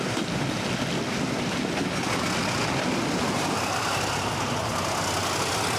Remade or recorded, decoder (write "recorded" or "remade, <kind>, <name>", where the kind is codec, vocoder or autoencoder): recorded